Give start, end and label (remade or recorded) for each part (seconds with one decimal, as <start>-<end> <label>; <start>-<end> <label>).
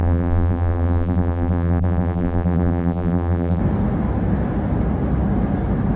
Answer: 0.0-3.6 remade; 3.6-6.0 recorded